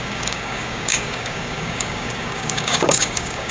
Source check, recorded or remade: remade